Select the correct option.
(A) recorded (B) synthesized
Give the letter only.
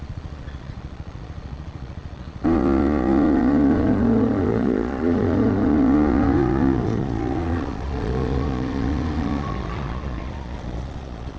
B